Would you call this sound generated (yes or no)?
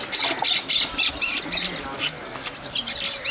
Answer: no